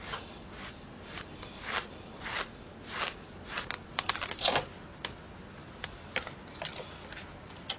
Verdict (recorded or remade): recorded